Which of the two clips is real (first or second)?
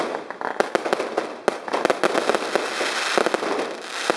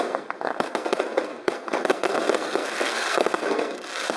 first